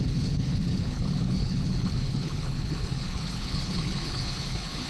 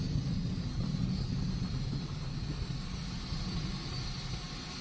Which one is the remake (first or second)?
first